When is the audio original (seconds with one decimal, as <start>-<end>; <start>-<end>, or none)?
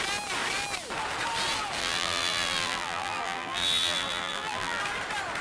0.0-1.8; 4.8-5.4